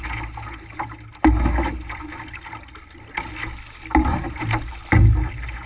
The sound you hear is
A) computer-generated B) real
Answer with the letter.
B